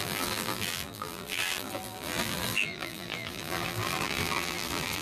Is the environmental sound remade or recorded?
remade